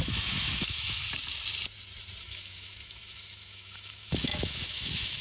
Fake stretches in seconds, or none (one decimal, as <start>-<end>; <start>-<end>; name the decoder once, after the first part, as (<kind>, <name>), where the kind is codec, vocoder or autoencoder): 0.0-1.0 (autoencoder, DAC-VAE); 2.2-5.2